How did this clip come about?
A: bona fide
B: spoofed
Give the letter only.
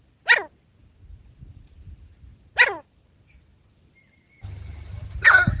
A